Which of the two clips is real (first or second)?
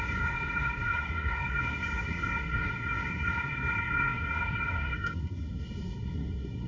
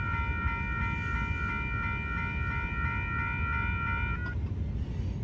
second